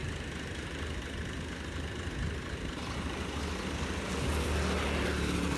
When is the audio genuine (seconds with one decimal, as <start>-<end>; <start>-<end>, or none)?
3.4-5.6